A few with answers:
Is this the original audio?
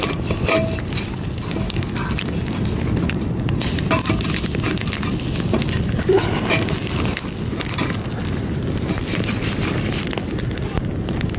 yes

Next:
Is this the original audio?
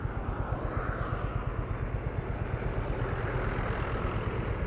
yes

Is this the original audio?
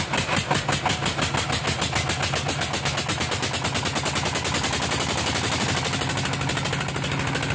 yes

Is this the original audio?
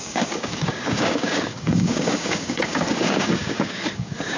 no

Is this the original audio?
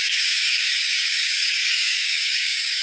no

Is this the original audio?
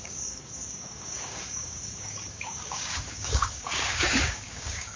no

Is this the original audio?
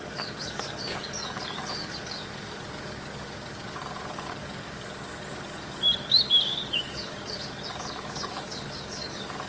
no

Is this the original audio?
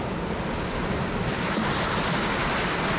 yes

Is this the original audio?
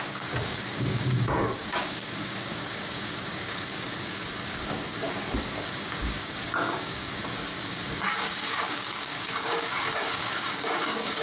no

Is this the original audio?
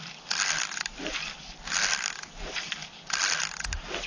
yes